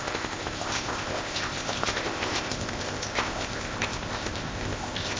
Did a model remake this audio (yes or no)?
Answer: yes